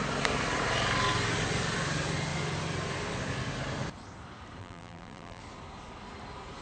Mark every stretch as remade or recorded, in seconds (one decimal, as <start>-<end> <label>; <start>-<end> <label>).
0.0-4.6 recorded; 4.6-5.4 remade; 5.4-6.6 recorded